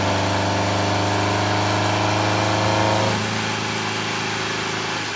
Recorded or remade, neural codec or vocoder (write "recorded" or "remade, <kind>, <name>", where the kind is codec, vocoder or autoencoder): recorded